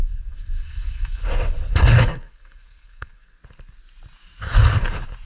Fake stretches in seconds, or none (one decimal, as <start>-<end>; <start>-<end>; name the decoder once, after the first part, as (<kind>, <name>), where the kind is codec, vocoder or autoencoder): 0.0-1.2 (codec, SNAC); 2.0-3.4